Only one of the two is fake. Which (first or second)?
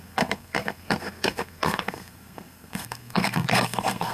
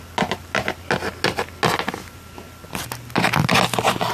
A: first